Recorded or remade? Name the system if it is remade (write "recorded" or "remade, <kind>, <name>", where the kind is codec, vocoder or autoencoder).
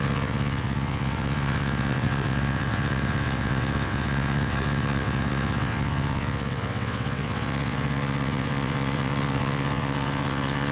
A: remade, vocoder, WaveNeXt